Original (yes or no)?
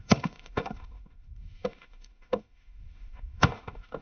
no